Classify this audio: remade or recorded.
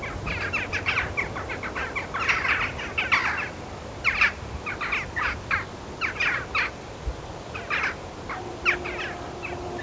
recorded